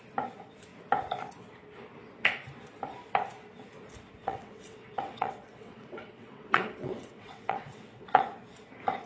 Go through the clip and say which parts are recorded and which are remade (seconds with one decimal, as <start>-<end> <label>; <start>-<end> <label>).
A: 0.0-4.2 recorded; 4.2-8.2 remade; 8.2-9.1 recorded